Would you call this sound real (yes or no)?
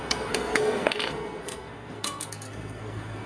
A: no